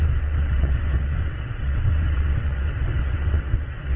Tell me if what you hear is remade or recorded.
remade